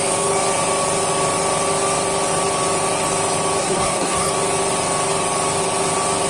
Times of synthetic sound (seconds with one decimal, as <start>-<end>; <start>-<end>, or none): 3.6-4.3